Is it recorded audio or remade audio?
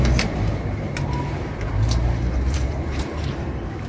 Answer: remade